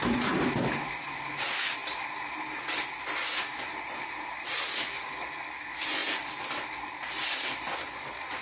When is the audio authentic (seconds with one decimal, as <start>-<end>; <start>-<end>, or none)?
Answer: 0.0-8.4